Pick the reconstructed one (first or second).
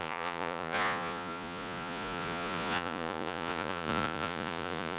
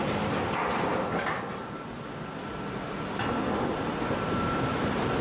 first